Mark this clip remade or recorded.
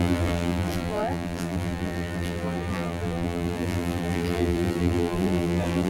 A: remade